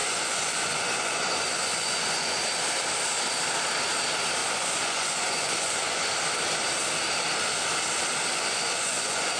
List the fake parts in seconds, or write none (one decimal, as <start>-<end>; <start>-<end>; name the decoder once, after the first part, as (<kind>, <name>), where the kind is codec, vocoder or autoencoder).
0.0-2.4 (vocoder, Vocos); 4.4-6.0; 8.3-9.4